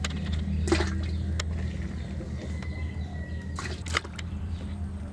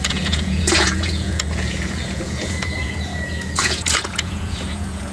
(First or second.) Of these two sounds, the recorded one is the first